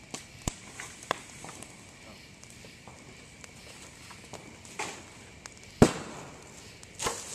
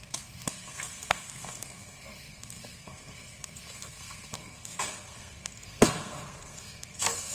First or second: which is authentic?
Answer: first